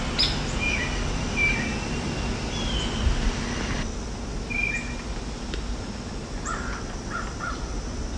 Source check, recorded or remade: recorded